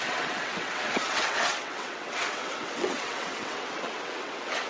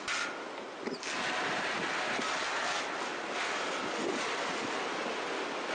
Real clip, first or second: second